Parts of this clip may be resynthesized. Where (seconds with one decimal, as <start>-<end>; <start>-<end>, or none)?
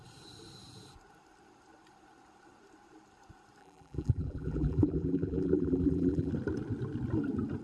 3.6-6.3